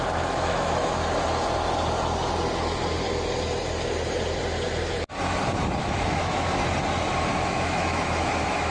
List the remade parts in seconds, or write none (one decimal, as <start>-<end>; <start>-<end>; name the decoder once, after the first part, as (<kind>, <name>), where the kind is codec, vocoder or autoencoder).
0.0-1.0 (autoencoder, DAC-VAE); 5.8-6.6; 7.2-8.7